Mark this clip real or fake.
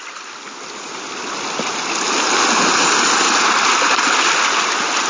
real